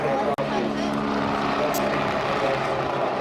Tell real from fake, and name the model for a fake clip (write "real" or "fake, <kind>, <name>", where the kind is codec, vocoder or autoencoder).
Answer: real